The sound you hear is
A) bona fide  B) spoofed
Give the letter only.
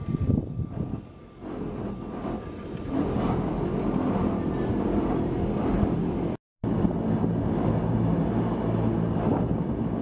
A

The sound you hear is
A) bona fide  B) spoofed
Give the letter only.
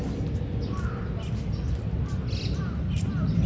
A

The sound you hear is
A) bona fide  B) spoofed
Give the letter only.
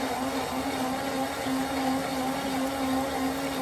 A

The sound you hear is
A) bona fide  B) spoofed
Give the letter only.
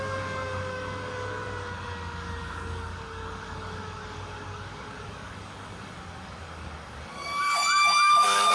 B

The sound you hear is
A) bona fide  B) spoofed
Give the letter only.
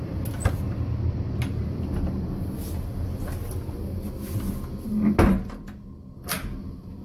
A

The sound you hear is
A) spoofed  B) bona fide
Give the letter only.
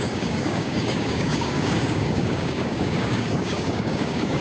A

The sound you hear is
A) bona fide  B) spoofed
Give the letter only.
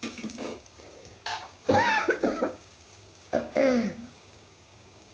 B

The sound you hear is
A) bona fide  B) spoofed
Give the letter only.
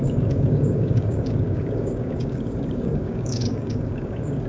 B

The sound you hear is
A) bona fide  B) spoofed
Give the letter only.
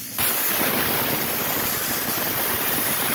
A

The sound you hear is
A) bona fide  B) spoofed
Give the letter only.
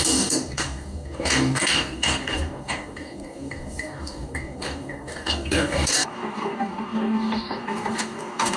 B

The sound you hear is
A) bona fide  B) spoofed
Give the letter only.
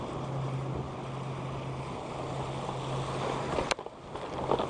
A